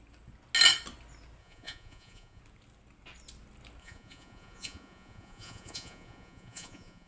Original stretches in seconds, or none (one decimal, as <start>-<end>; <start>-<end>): 0.0-1.4; 2.4-3.8